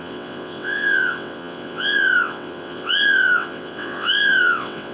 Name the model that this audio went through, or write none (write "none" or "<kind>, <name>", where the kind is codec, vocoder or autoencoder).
vocoder, WaveNeXt